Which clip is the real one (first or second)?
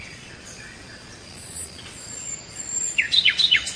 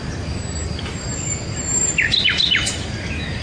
second